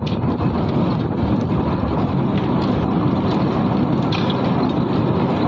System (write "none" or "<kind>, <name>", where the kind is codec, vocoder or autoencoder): none